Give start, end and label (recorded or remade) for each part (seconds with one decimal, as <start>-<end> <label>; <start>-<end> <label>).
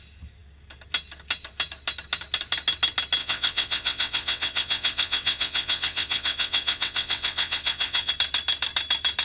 0.0-3.2 recorded; 3.2-8.1 remade; 8.1-9.2 recorded